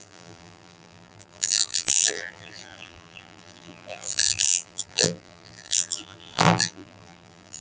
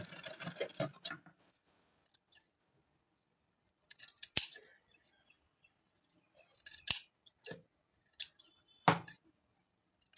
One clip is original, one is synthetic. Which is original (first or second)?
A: second